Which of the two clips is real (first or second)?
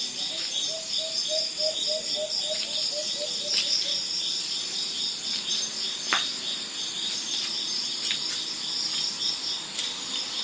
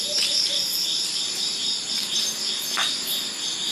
first